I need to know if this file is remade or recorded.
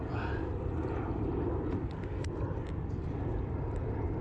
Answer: recorded